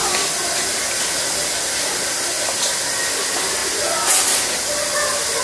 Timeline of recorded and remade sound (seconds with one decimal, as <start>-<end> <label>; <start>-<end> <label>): 0.0-5.4 recorded